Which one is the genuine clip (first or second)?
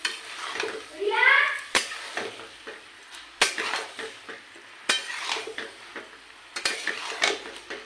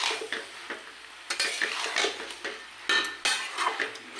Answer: second